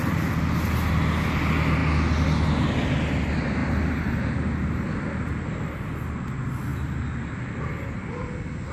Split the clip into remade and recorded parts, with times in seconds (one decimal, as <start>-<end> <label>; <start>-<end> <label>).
0.0-8.7 recorded